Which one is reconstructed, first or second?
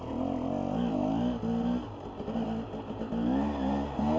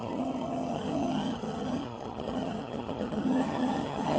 second